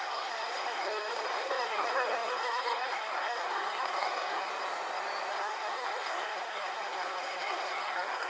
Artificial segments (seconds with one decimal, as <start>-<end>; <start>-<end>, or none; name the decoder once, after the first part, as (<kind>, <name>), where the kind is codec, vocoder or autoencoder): 0.0-4.5 (codec, SNAC); 5.3-8.3